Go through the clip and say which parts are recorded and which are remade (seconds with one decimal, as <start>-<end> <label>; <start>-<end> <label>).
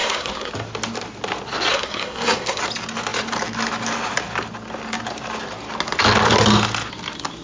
0.0-0.5 remade; 0.5-1.7 recorded; 1.7-2.6 remade; 2.6-7.4 recorded